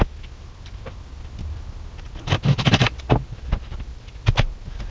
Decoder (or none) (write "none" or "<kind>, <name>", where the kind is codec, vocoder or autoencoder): none